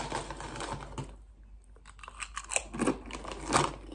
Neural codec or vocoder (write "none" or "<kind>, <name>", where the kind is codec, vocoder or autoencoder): none